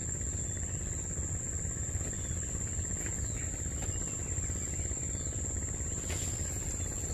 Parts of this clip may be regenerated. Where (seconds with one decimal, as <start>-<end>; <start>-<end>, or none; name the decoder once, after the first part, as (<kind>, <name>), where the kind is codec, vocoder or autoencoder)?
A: none